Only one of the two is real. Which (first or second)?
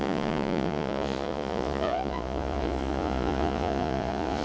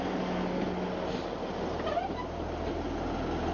second